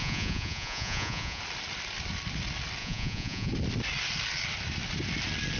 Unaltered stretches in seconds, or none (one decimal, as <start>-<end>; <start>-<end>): 1.4-2.8; 3.5-5.6